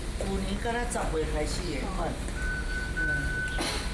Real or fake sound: real